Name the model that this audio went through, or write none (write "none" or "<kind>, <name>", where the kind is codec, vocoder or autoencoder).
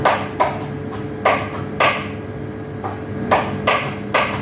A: none